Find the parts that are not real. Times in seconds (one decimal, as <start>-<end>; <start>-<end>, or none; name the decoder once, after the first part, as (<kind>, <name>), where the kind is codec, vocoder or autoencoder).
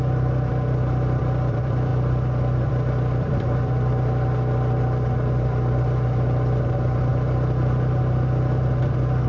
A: 0.0-0.5 (vocoder, BigVGAN v2); 1.2-9.3